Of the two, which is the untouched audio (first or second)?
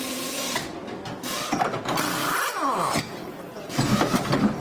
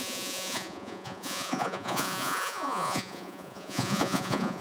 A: first